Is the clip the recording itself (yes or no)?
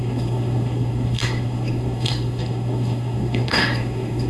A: no